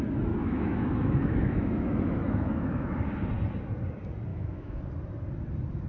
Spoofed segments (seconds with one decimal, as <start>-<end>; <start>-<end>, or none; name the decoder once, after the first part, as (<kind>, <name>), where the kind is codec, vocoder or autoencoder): 0.4-3.0 (autoencoder, DAC-VAE); 4.3-4.8